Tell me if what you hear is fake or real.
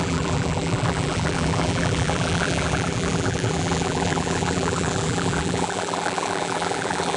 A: fake